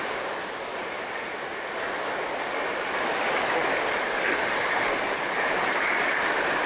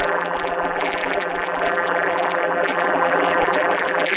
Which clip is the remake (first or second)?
second